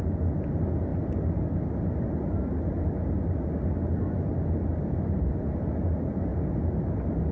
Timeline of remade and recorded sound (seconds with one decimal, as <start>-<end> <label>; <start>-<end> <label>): 0.0-6.3 recorded; 6.3-6.8 remade; 6.8-7.3 recorded